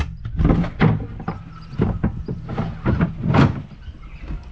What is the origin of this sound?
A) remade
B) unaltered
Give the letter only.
B